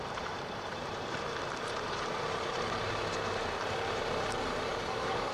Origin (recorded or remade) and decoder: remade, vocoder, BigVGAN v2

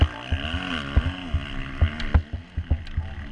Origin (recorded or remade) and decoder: recorded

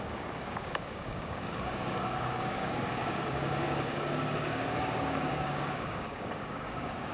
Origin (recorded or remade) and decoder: remade, codec, DAC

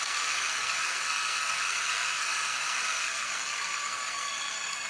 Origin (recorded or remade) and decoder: remade, codec, SNAC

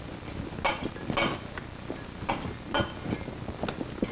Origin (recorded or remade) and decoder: recorded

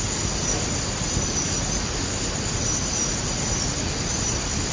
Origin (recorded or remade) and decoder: recorded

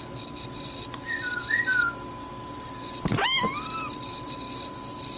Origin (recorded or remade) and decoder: recorded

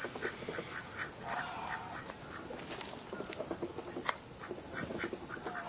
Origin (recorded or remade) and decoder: recorded